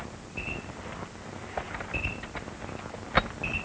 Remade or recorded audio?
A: recorded